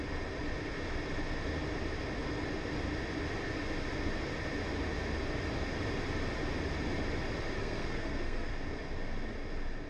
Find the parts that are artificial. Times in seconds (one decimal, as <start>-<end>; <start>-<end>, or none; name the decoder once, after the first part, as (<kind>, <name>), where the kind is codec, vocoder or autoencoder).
7.6-8.5 (codec, SNAC)